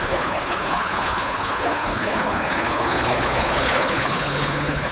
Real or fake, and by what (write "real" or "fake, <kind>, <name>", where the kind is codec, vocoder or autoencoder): fake, codec, HILCodec